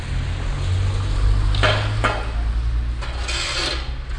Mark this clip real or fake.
real